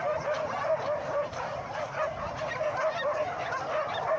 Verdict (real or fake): real